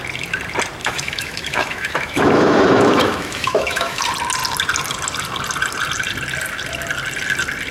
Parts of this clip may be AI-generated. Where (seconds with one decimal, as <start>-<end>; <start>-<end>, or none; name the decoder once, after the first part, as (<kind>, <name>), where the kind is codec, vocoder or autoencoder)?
0.8-4.0 (autoencoder, DAC-VAE)